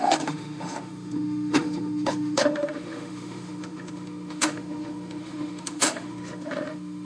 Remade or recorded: remade